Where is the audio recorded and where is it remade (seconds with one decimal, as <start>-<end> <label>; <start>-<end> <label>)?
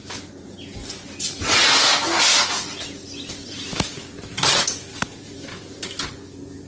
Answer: 0.0-0.6 remade; 0.6-3.4 recorded; 3.4-4.0 remade; 4.0-4.9 recorded; 4.9-6.1 remade; 6.1-6.7 recorded